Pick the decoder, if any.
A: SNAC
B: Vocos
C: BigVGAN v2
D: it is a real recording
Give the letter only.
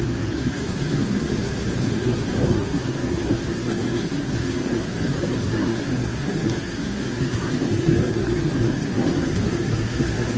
A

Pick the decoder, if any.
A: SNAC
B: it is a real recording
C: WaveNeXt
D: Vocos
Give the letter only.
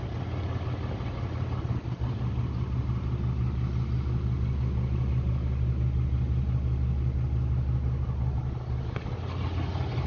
B